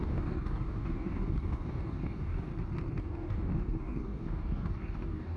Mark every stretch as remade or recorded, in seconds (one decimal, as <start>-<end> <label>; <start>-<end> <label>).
0.0-2.5 remade; 2.5-3.0 recorded; 3.0-5.4 remade